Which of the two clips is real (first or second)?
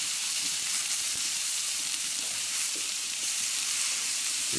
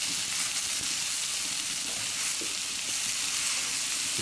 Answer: second